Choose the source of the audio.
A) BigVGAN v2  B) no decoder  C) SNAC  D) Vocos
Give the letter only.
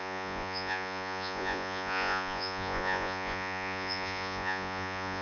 D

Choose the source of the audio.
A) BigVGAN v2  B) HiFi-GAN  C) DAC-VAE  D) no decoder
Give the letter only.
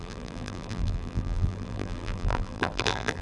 A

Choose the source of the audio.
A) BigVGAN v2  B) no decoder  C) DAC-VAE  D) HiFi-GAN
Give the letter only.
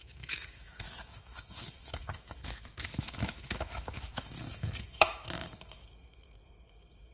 C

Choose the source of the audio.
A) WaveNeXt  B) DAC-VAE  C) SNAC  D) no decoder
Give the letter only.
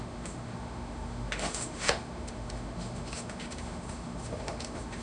B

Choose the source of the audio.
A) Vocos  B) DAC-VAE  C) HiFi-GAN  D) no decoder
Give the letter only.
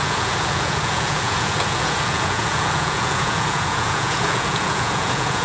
A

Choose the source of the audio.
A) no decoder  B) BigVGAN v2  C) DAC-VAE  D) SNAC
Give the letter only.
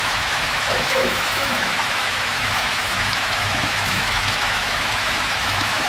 C